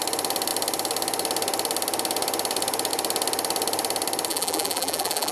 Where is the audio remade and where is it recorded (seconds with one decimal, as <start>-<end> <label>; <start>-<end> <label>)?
0.0-4.3 recorded; 4.3-5.3 remade